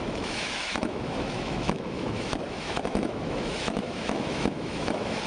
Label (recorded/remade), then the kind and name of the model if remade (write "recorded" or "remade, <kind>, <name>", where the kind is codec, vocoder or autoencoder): remade, autoencoder, DAC-VAE